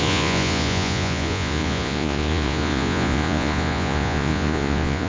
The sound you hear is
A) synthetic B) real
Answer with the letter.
A